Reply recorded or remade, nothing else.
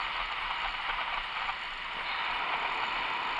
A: recorded